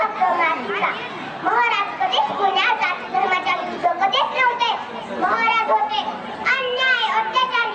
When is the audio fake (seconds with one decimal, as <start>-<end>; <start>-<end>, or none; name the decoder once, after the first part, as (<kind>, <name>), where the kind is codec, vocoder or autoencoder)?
none